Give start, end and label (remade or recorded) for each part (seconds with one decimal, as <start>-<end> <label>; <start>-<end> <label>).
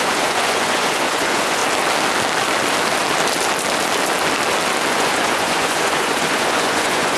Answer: 0.0-1.6 remade; 1.6-4.9 recorded; 4.9-7.2 remade